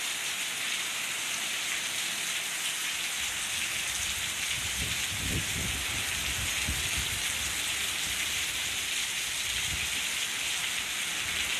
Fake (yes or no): no